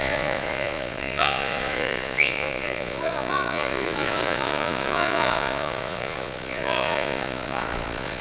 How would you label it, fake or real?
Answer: fake